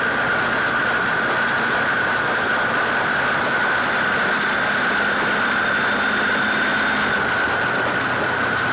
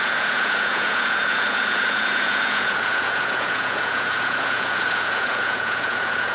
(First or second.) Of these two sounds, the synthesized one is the second